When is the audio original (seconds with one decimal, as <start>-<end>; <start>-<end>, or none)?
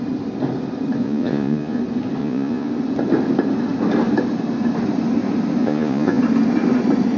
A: 0.0-1.0; 1.8-2.2; 2.7-5.6; 6.2-7.2